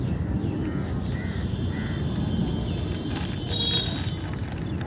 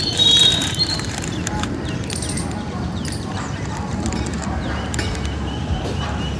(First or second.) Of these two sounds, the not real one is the second